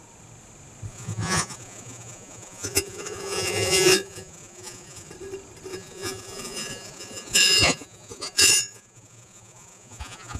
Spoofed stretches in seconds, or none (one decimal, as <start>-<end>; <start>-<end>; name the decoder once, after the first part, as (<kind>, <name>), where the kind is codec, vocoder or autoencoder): 0.9-5.1 (vocoder, Vocos); 5.7-10.4